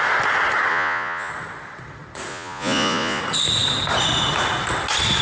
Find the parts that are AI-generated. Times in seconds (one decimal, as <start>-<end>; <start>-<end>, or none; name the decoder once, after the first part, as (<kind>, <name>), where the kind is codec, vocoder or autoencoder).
0.7-1.3 (vocoder, Vocos); 2.3-3.2